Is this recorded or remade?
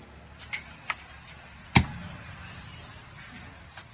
recorded